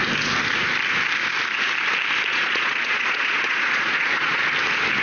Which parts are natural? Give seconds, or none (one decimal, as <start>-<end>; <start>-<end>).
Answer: 0.0-2.3; 4.5-5.0